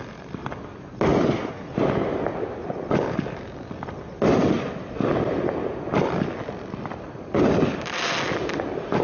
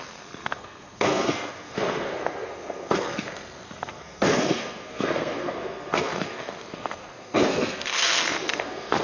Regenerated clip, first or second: second